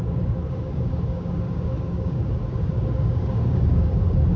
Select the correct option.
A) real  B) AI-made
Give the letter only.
B